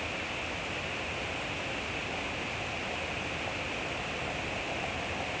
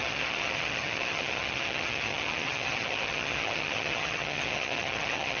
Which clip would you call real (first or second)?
first